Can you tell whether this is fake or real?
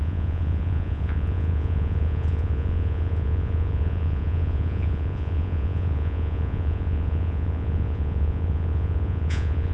fake